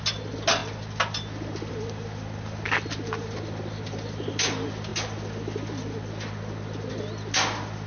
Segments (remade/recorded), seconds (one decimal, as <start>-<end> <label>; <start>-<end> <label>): 0.0-7.9 recorded

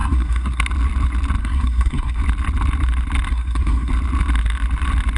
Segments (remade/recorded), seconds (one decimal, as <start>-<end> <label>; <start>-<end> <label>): 0.0-0.6 remade; 0.6-1.4 recorded; 1.4-2.2 remade; 2.2-3.3 recorded; 3.3-3.9 remade; 3.9-5.2 recorded